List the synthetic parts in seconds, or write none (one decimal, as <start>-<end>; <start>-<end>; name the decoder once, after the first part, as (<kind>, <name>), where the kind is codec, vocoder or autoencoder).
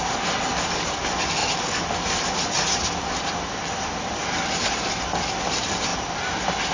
none